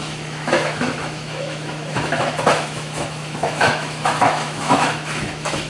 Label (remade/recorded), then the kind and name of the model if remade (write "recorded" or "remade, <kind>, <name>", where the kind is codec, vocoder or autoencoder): remade, autoencoder, DAC-VAE